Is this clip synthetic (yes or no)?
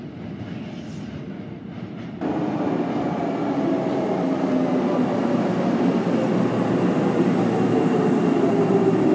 no